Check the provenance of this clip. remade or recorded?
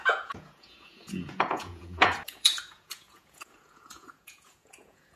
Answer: remade